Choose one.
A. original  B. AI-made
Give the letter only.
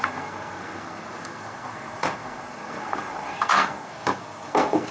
B